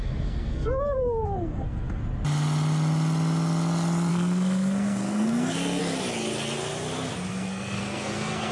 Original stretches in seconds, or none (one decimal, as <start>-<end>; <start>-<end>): 2.0-4.1; 5.8-7.3